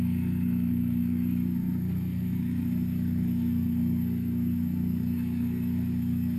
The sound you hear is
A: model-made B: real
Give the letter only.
A